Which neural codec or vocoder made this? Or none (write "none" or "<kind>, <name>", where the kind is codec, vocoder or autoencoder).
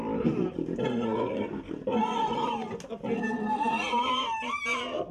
none